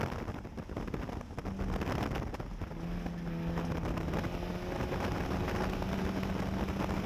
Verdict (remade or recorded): recorded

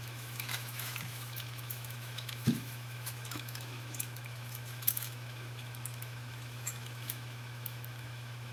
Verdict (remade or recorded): remade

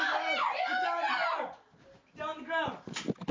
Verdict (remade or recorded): recorded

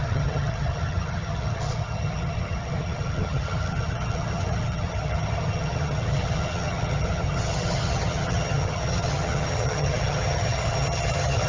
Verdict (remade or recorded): remade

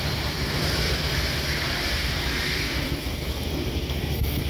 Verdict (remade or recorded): remade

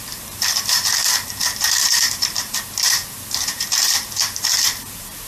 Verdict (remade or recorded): remade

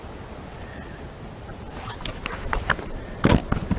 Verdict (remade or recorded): recorded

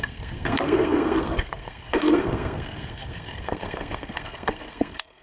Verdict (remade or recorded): remade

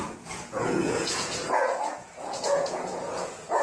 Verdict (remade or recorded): remade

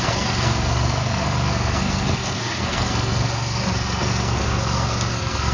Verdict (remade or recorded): remade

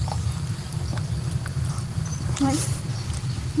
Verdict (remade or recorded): recorded